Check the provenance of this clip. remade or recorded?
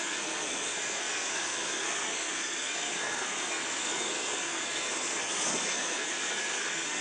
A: remade